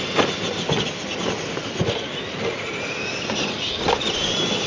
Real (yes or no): yes